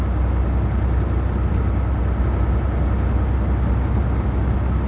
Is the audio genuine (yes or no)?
yes